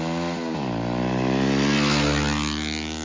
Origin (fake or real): real